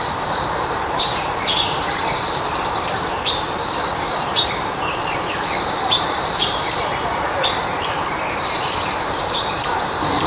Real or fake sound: fake